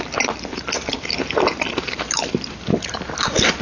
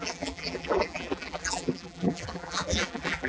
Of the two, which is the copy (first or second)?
second